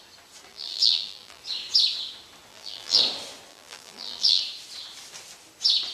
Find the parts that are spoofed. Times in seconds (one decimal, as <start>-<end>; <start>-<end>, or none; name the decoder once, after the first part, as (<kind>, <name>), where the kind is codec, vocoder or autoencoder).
0.5-1.4 (vocoder, BigVGAN v2); 2.5-3.0; 3.5-4.4